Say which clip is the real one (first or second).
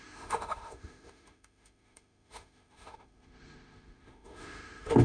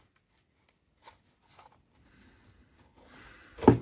second